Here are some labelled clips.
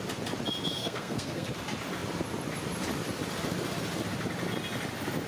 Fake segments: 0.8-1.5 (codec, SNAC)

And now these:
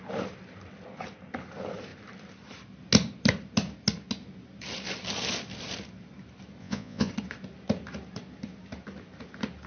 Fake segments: 6.6-7.1 (vocoder, Vocos)

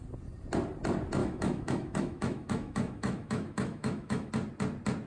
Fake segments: 1.2-4.3 (autoencoder, DAC-VAE)

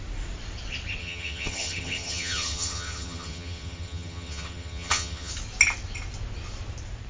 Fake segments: 1.0-5.3 (vocoder, HiFi-GAN)